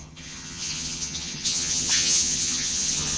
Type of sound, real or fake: fake